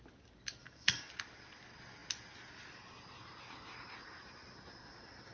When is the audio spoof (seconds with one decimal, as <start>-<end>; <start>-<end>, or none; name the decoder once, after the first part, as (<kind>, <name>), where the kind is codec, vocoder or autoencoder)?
0.6-1.1 (codec, DAC)